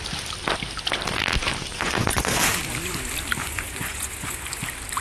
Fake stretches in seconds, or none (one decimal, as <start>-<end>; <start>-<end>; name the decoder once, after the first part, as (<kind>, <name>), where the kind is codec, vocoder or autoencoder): 1.7-2.4 (vocoder, Vocos); 3.4-4.6